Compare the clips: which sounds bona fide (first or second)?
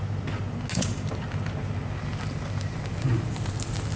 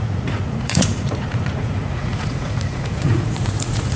first